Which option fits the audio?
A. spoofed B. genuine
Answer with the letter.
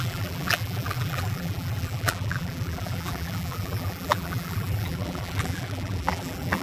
A